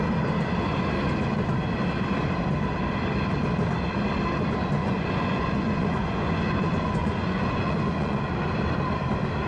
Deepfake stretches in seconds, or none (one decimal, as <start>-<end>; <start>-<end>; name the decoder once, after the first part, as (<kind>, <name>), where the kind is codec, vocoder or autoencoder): 4.8-8.3 (vocoder, Vocos)